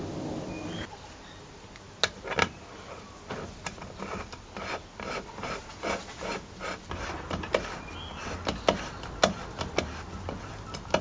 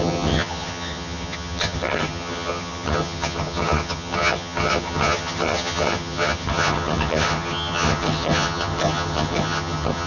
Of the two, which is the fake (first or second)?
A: second